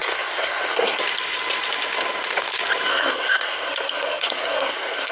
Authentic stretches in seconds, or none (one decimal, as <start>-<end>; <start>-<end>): 1.0-2.9